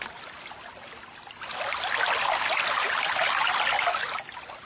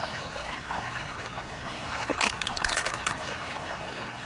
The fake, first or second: second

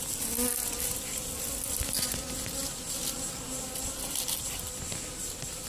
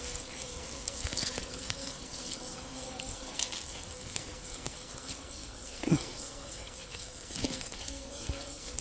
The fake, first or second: second